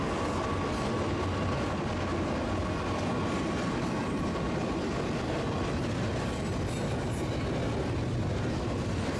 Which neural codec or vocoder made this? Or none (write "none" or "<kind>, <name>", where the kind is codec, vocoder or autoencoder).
none